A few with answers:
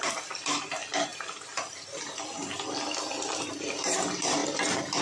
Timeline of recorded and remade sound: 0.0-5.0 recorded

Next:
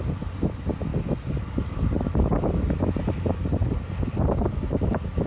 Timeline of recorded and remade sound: 0.0-5.3 recorded

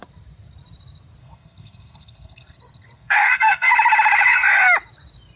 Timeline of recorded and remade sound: 0.0-1.2 recorded; 1.2-3.7 remade; 3.7-5.4 recorded

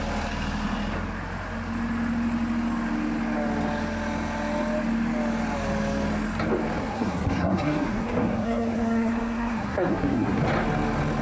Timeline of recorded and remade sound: 0.0-6.8 recorded; 6.8-10.4 remade; 10.4-11.2 recorded

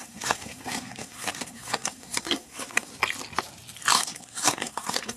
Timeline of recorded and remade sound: 0.0-2.9 remade; 2.9-3.9 recorded; 3.9-5.2 remade